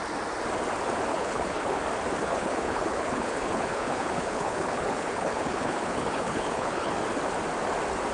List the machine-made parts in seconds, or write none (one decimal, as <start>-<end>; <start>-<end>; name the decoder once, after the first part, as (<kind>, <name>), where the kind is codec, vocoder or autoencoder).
1.1-1.8 (codec, HILCodec); 2.2-6.9